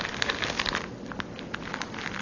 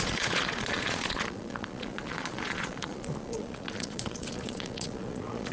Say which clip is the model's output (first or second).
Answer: second